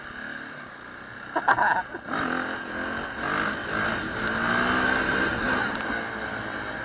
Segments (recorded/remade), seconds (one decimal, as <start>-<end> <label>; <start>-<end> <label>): 0.0-6.8 recorded